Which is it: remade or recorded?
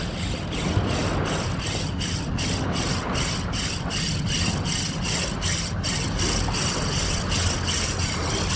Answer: recorded